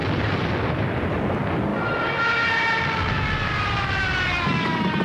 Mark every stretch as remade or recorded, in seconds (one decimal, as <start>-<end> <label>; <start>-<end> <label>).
0.0-5.0 recorded